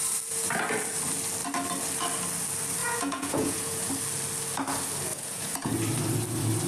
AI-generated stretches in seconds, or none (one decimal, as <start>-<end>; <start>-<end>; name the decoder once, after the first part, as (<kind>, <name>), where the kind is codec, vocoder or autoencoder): 2.8-3.9 (vocoder, Vocos); 5.1-5.7